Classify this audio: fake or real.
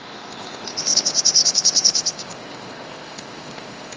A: fake